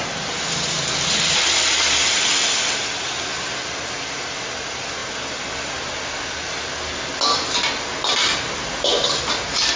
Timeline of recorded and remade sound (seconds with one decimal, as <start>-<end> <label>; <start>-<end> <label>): 0.0-9.8 recorded